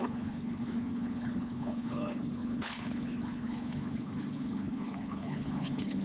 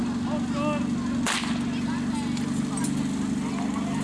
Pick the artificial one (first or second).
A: first